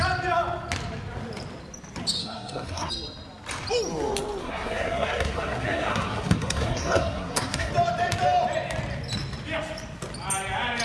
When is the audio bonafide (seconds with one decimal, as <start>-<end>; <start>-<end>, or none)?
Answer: 0.0-2.2; 2.9-4.4; 7.7-10.8